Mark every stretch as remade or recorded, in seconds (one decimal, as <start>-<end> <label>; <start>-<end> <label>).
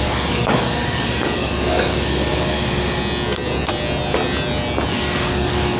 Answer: 0.0-3.0 remade; 3.0-4.9 recorded; 4.9-5.8 remade